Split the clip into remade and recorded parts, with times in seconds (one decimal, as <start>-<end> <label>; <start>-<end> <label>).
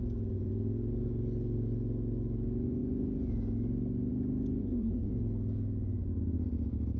0.0-4.6 recorded; 4.6-5.1 remade; 5.1-7.0 recorded